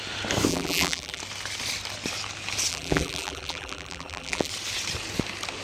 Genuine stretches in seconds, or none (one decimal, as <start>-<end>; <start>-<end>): 0.0-0.5; 1.2-2.7; 4.5-5.6